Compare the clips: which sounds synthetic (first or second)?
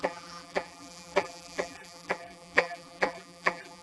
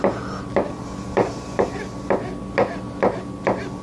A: first